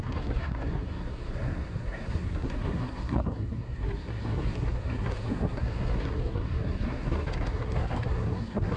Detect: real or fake fake